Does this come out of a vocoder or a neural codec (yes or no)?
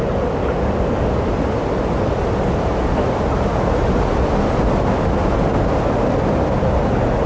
no